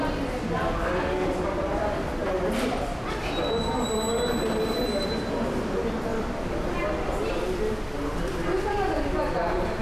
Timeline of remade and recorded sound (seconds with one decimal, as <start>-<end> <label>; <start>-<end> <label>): 0.0-2.2 recorded; 2.2-3.1 remade; 3.1-6.1 recorded; 6.1-6.7 remade; 6.7-9.8 recorded